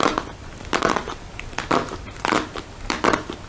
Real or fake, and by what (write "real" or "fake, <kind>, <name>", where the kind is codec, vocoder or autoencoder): fake, vocoder, BigVGAN v2